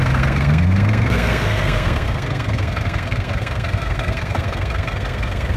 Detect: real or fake fake